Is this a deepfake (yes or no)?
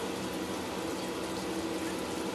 no